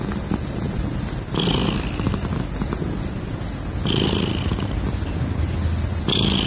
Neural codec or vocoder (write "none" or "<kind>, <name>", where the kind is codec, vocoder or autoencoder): none